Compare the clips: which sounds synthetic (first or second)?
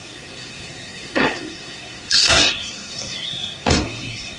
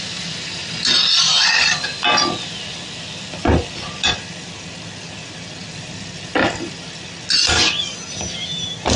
first